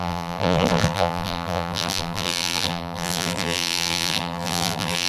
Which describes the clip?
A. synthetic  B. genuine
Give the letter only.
A